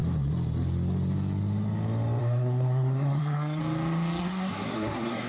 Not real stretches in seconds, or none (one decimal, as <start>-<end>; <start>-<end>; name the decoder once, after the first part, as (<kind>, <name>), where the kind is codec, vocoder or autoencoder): 2.2-3.6 (codec, SNAC); 4.2-5.3